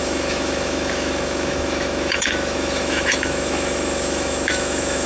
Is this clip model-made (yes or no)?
yes